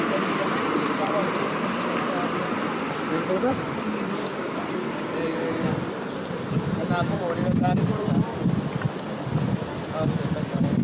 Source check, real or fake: real